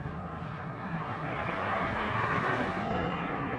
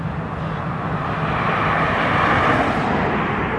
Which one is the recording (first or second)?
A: second